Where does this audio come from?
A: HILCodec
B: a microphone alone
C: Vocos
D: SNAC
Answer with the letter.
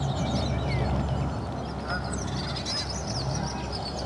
B